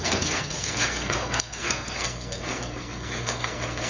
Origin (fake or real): fake